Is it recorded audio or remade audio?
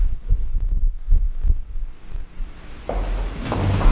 recorded